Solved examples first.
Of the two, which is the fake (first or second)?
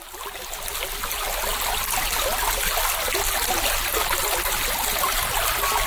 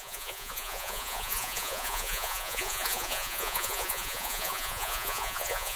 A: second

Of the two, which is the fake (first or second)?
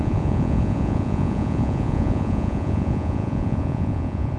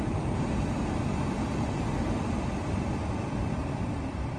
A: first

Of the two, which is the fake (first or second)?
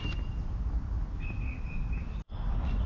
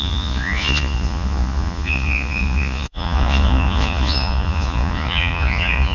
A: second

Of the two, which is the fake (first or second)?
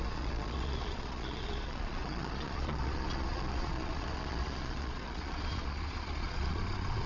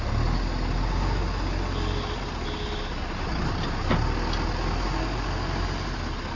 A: first